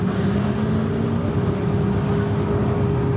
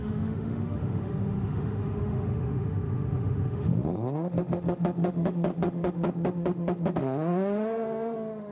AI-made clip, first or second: second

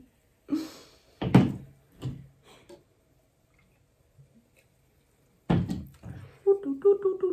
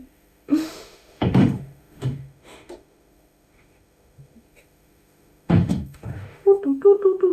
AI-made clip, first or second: second